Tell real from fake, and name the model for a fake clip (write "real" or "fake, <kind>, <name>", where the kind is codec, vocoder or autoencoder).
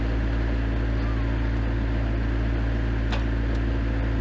real